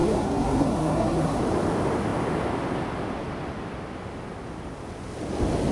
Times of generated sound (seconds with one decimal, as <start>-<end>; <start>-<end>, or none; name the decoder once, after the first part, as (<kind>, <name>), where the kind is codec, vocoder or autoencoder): 0.0-1.4 (codec, SNAC)